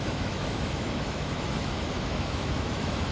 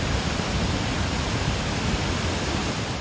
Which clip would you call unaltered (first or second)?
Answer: second